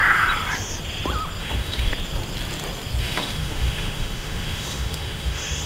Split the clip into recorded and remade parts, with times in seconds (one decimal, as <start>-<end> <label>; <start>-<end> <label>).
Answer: 0.0-1.4 recorded; 1.4-1.9 remade; 1.9-3.0 recorded; 3.0-5.7 remade